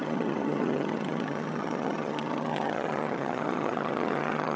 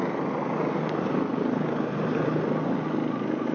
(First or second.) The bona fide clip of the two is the second